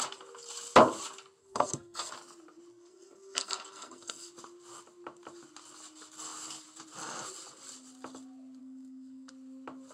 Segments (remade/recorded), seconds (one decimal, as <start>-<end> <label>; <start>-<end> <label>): 0.0-1.4 recorded; 1.4-2.1 remade; 2.1-2.7 recorded; 2.7-4.3 remade; 4.3-8.6 recorded; 8.6-9.3 remade; 9.3-9.9 recorded